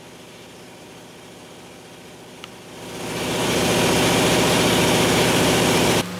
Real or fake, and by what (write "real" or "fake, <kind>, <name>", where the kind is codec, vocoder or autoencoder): real